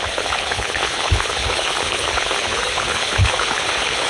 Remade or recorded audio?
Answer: remade